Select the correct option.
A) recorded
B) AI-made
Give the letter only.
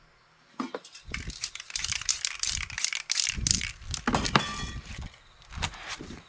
A